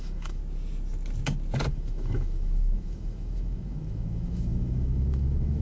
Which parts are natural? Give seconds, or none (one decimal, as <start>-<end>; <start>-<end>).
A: 0.4-1.7